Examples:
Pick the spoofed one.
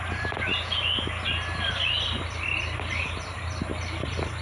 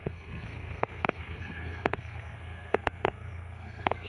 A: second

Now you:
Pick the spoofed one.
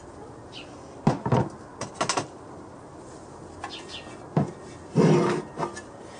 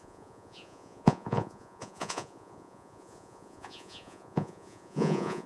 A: second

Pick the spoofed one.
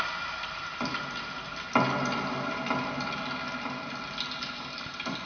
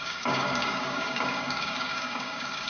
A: second